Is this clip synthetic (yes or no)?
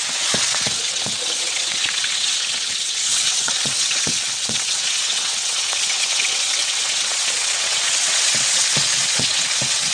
yes